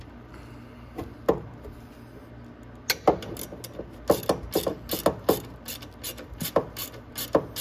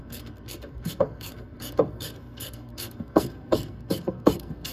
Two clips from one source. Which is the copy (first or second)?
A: second